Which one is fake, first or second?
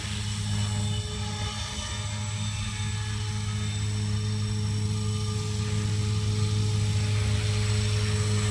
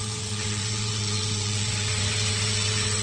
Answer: second